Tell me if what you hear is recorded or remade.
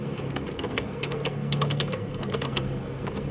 remade